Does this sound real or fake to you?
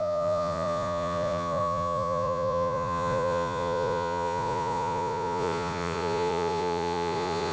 fake